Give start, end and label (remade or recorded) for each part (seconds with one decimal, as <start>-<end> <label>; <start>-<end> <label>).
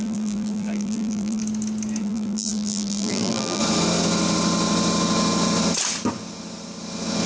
0.0-1.4 remade; 1.4-2.0 recorded; 2.0-3.6 remade; 3.6-7.3 recorded